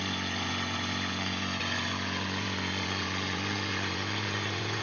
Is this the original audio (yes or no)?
no